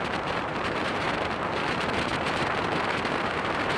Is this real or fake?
fake